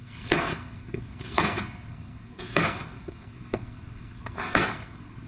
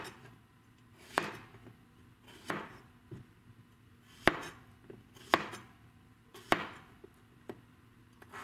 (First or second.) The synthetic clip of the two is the first